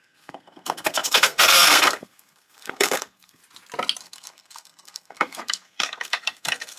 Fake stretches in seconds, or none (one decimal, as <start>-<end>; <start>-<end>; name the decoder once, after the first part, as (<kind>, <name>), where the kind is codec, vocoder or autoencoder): 0.0-3.4 (codec, SNAC); 4.0-6.8